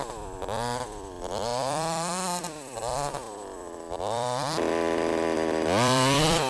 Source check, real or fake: fake